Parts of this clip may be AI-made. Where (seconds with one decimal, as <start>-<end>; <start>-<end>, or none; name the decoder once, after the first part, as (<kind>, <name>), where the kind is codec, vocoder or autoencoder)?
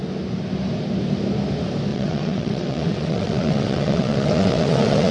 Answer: 1.9-5.1 (vocoder, WaveNeXt)